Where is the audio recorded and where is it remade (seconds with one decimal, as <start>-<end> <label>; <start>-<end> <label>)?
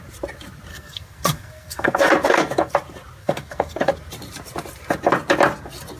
0.0-0.7 recorded; 0.7-2.7 remade; 2.7-3.2 recorded; 3.2-3.9 remade; 3.9-6.0 recorded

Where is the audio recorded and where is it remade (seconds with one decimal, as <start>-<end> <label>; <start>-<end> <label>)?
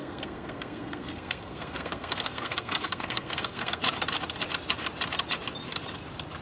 0.0-3.8 remade; 3.8-6.4 recorded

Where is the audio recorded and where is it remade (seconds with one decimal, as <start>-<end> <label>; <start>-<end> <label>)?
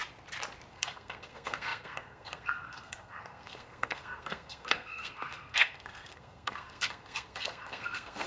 0.0-0.7 recorded; 0.7-8.3 remade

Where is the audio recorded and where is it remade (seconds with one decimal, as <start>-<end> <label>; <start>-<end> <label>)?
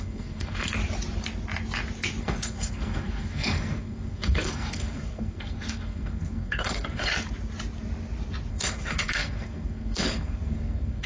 0.0-0.8 remade; 0.8-2.2 recorded; 2.2-7.1 remade; 7.1-8.5 recorded; 8.5-11.1 remade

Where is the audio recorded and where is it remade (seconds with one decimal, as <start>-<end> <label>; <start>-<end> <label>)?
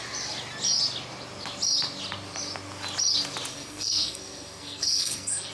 0.0-3.5 recorded; 3.5-5.5 remade